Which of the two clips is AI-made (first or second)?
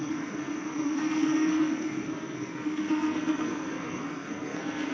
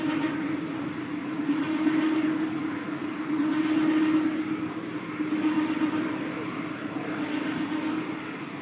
first